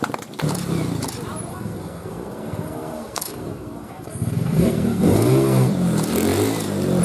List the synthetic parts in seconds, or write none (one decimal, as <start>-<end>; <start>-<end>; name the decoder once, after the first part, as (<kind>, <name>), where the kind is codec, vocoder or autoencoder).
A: 1.5-5.7 (codec, SNAC)